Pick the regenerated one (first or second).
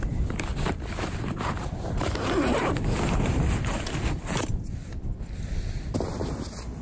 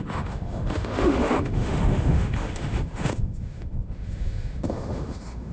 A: second